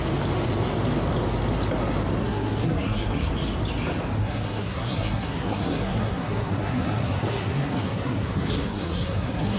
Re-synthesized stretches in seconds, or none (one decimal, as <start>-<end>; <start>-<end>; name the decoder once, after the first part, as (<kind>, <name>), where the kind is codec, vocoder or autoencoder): 2.2-3.3 (codec, SNAC); 4.2-9.6